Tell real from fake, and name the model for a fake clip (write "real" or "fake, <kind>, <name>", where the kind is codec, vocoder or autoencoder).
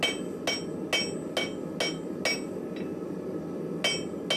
real